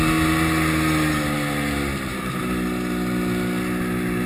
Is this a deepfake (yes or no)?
no